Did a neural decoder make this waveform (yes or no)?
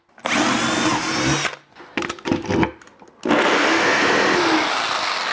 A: no